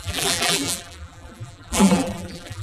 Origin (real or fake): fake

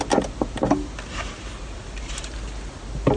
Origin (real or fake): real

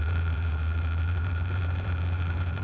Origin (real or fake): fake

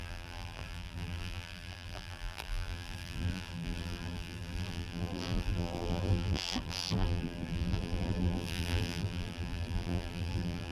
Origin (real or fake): fake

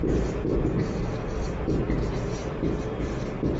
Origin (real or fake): real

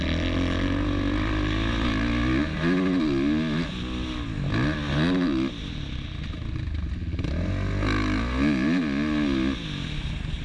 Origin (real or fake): real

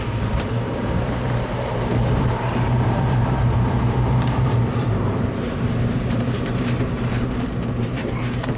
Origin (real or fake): fake